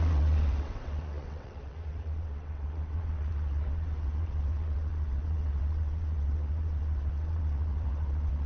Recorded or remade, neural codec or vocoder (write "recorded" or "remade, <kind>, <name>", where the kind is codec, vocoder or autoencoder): remade, vocoder, WaveNeXt